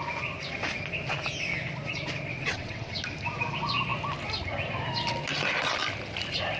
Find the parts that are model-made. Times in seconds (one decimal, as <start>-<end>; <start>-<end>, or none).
2.3-2.9